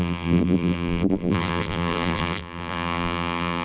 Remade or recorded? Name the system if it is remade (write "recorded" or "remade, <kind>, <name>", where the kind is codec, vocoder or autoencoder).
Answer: remade, vocoder, BigVGAN v2